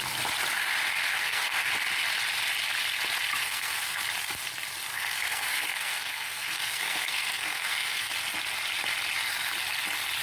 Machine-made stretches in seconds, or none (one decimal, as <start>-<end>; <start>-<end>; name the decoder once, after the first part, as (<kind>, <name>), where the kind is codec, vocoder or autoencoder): 1.1-1.7 (codec, SNAC); 3.4-4.0; 4.9-8.1